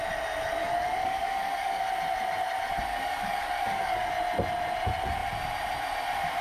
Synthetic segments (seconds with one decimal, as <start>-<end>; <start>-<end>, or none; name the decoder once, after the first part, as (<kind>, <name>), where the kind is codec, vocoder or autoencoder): 0.6-1.8 (codec, DAC); 2.9-4.1